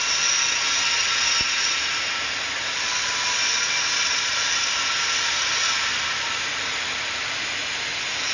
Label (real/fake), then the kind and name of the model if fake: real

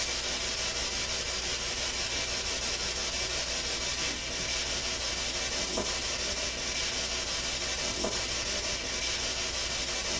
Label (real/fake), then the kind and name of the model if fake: real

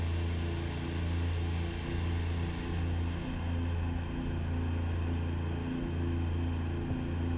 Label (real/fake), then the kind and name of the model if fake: real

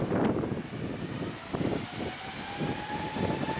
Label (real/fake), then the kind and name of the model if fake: real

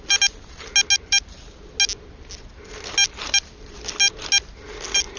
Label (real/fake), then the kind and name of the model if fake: real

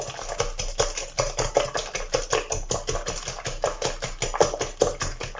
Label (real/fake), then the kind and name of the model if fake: real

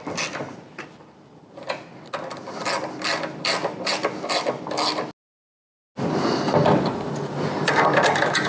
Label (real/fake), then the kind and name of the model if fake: real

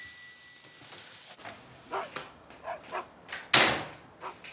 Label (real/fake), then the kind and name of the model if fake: real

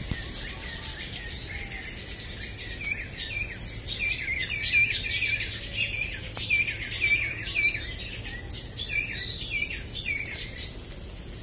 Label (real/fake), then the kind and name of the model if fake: real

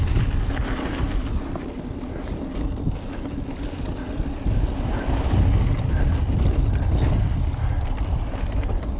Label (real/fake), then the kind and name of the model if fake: real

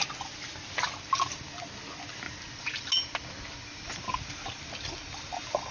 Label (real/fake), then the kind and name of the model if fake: real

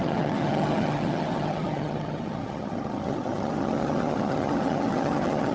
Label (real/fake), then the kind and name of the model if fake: fake, vocoder, HiFi-GAN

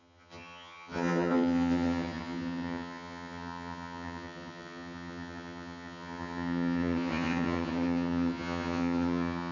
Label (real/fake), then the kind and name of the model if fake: fake, vocoder, HiFi-GAN